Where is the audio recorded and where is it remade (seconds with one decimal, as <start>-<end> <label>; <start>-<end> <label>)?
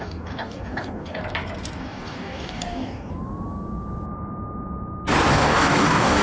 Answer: 0.0-1.2 remade; 1.2-1.8 recorded; 1.8-3.1 remade; 3.1-5.3 recorded; 5.3-6.2 remade